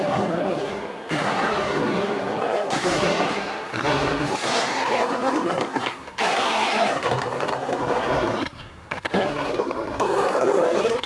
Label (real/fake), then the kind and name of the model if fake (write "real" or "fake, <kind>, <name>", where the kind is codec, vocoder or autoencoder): fake, codec, SNAC